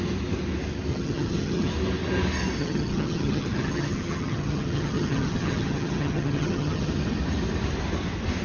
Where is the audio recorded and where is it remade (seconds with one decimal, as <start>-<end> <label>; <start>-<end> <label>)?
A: 0.0-0.9 recorded; 0.9-1.7 remade; 1.7-2.6 recorded; 2.6-6.9 remade; 6.9-8.4 recorded